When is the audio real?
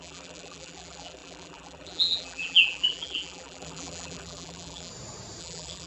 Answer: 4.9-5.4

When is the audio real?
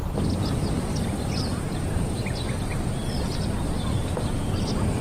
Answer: 2.5-3.0; 3.6-5.0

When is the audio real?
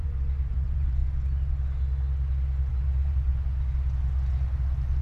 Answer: 1.0-2.7; 3.3-5.0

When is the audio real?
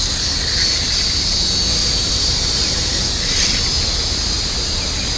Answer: 0.0-1.8; 3.1-5.2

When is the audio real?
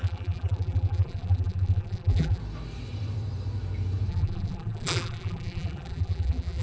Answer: 2.4-4.1